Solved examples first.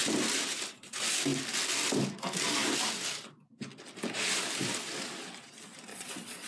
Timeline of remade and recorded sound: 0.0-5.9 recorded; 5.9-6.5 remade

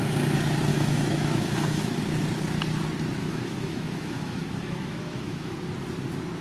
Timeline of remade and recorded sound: 0.0-0.7 recorded; 0.7-2.0 remade; 2.0-3.2 recorded; 3.2-5.5 remade; 5.5-6.4 recorded

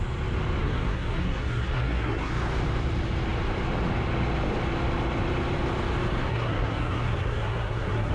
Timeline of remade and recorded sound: 0.0-0.6 recorded; 0.6-2.3 remade; 2.3-6.3 recorded; 6.3-8.1 remade

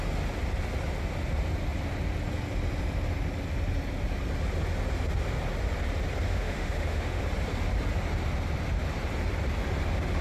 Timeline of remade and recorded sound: 0.0-6.3 recorded; 6.3-7.2 remade; 7.2-10.2 recorded

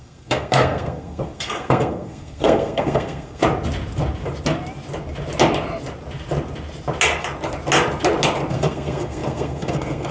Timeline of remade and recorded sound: 0.0-3.4 remade; 3.4-8.5 recorded; 8.5-10.1 remade

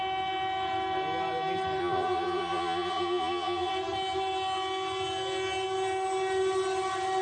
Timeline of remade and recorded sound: 0.0-1.8 recorded; 1.8-3.7 remade; 3.7-7.2 recorded

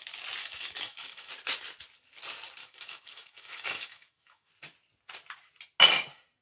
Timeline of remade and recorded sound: 0.0-0.4 recorded; 0.4-1.3 remade; 1.3-2.6 recorded; 2.6-4.5 remade; 4.5-6.4 recorded